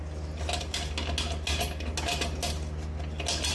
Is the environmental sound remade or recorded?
recorded